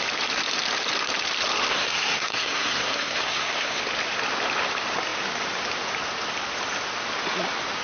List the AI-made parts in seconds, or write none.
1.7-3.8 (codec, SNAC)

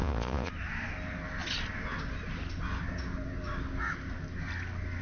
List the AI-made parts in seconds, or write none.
0.0-0.5 (vocoder, Vocos)

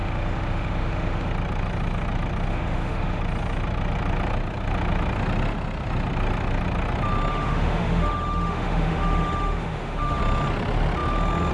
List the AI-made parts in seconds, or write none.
0.0-1.3 (autoencoder, DAC-VAE); 2.5-3.2; 7.3-10.2